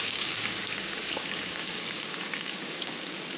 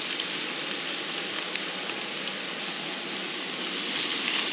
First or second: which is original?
second